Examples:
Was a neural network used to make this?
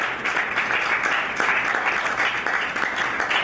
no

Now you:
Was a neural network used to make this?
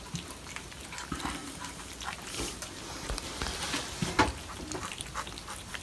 no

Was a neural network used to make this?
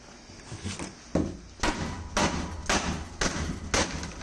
no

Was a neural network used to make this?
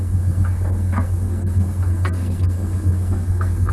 yes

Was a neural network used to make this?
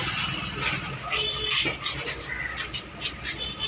no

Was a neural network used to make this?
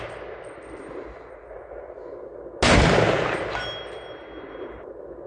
no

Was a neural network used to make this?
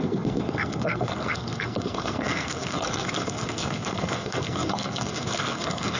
yes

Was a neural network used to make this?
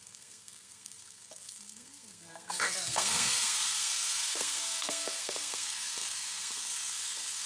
yes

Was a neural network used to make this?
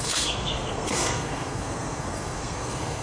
yes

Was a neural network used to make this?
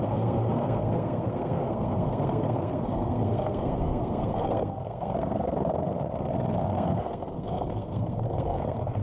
yes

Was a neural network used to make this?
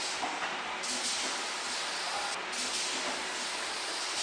no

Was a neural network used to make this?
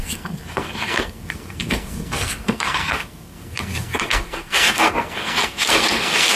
yes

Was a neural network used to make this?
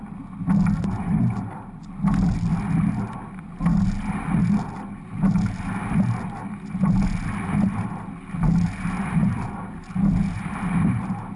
no